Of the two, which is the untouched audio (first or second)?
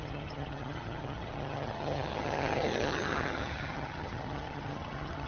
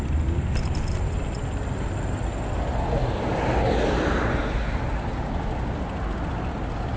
second